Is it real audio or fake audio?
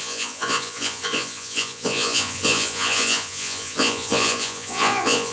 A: fake